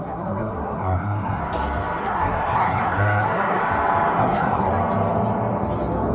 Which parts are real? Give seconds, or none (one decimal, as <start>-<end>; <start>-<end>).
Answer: 1.4-2.0; 3.6-4.2; 4.7-6.1